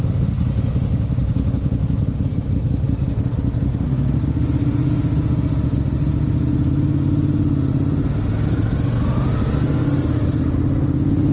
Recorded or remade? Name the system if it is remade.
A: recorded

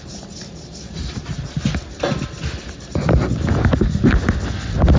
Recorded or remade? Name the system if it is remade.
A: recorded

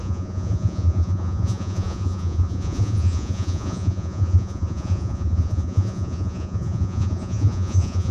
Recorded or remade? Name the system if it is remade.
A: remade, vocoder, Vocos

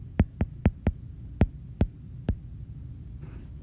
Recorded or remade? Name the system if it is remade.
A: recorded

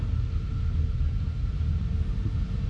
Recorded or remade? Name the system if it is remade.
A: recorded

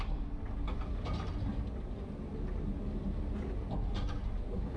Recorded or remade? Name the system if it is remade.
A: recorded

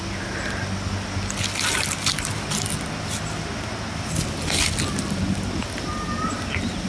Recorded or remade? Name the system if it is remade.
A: recorded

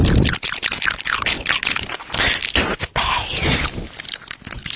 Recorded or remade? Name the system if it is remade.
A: recorded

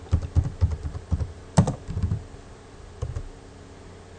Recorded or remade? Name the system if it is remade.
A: recorded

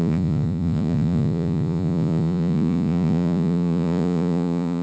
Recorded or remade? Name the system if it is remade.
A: remade, vocoder, Vocos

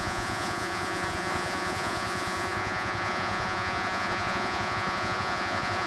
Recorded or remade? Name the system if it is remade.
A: remade, vocoder, Vocos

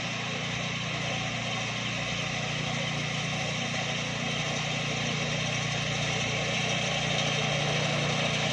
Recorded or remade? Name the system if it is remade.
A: recorded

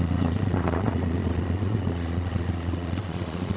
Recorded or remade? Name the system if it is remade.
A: remade, vocoder, Vocos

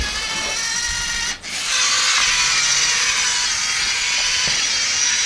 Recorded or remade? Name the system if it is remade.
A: recorded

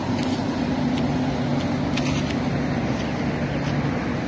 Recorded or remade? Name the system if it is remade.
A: recorded